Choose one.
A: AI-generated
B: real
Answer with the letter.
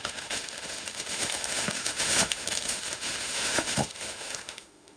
A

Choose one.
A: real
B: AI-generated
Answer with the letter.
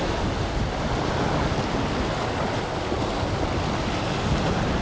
A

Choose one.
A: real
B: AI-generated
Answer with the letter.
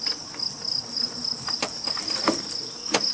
A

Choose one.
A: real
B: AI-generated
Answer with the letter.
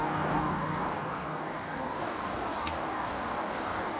B